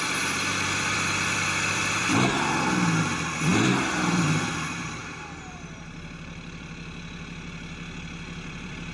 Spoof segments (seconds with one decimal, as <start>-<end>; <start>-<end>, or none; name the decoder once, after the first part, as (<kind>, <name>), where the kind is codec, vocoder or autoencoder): 0.0-5.0 (vocoder, BigVGAN v2); 5.5-8.9